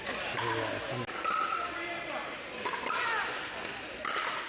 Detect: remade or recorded recorded